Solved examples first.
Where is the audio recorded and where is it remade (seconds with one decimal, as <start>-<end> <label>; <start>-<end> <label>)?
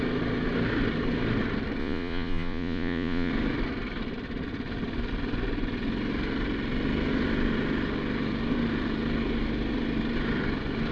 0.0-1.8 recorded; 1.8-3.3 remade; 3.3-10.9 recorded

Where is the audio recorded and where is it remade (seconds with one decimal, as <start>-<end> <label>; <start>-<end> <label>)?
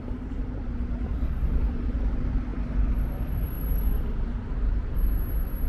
0.0-2.5 remade; 2.5-3.2 recorded; 3.2-5.7 remade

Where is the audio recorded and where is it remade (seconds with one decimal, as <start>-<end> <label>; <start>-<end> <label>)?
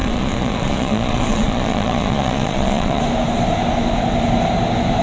0.0-3.0 remade; 3.0-5.0 recorded